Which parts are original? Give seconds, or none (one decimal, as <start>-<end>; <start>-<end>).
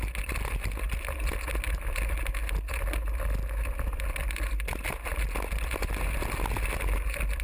0.0-7.4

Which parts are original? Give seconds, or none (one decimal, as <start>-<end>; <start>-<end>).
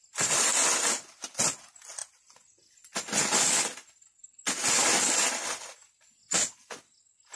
0.0-7.4